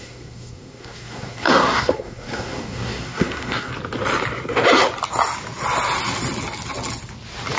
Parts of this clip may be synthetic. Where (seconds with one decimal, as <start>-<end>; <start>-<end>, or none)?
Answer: 0.0-3.7

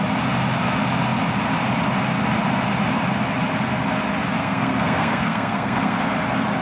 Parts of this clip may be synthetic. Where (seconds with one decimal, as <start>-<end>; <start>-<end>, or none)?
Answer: 4.4-6.0

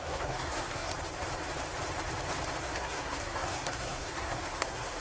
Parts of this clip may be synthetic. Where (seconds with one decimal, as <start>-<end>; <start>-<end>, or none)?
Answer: 0.0-0.9; 2.6-5.0

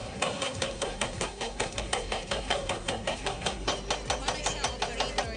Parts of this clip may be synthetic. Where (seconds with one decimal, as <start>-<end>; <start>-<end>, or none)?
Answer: 0.0-3.7